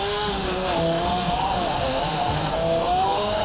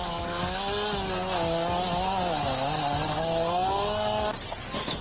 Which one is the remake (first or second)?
first